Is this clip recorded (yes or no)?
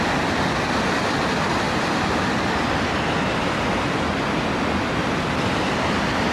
yes